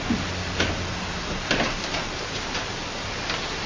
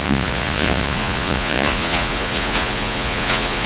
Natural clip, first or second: first